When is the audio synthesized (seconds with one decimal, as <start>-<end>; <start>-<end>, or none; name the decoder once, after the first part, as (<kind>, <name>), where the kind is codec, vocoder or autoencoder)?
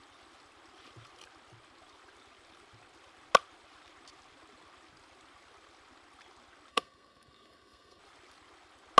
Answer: 6.7-8.0 (codec, SNAC)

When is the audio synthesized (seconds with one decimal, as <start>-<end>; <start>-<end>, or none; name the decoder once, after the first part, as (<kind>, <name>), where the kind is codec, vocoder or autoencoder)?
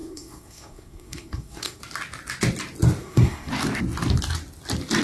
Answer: 0.0-1.8 (codec, SNAC); 3.0-3.5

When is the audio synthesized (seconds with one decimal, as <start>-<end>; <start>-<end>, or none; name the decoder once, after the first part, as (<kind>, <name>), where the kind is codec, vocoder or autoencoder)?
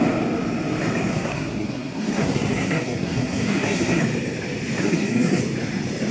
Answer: 1.1-4.0 (codec, SNAC); 4.8-5.4